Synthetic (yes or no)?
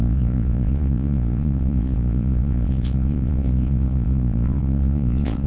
yes